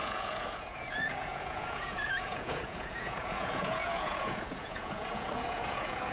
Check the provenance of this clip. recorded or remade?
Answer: remade